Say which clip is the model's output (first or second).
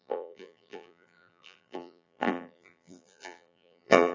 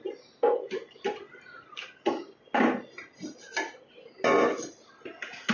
first